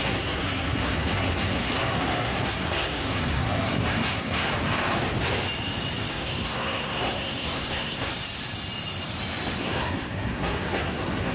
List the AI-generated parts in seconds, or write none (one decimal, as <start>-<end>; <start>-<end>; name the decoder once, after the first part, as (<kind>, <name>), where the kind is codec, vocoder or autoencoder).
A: 0.0-4.5 (codec, SNAC); 6.1-8.1; 9.6-11.3